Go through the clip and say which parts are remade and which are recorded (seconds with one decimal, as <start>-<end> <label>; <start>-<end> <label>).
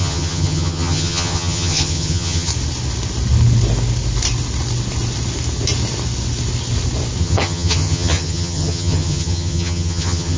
0.0-2.5 remade; 2.5-7.2 recorded; 7.2-10.4 remade